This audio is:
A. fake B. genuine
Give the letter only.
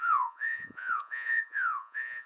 A